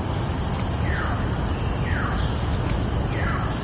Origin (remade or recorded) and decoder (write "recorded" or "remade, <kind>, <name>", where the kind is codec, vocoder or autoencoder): recorded